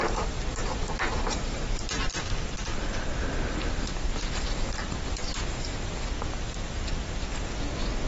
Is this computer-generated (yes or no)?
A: no